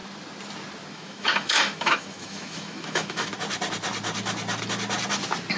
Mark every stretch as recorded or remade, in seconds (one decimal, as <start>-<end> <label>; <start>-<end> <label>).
0.0-0.9 recorded; 0.9-3.3 remade; 3.3-5.6 recorded